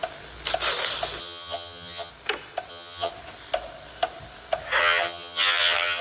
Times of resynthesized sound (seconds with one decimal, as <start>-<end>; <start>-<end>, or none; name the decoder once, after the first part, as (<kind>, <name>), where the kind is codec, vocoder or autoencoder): 1.2-2.1 (vocoder, HiFi-GAN); 2.7-3.1; 4.8-6.0